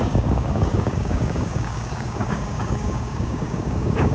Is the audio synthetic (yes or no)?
yes